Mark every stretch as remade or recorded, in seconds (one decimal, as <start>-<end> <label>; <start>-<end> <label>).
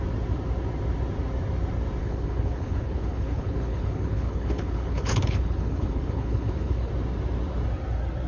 0.0-2.0 recorded; 2.0-6.9 remade; 6.9-8.3 recorded